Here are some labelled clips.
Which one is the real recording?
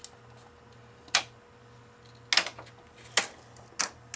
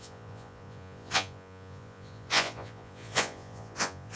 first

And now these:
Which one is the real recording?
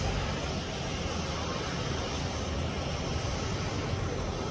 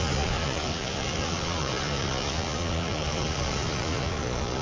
first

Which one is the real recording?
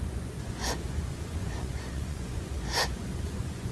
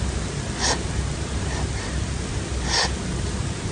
second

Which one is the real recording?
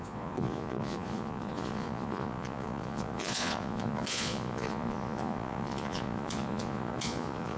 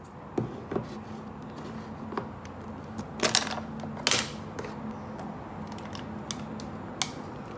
second